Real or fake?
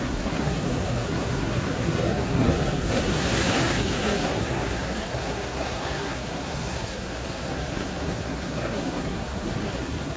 fake